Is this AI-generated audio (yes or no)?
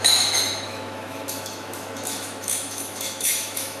yes